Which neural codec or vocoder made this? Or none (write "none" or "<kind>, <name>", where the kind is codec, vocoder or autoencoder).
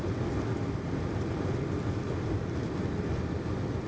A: none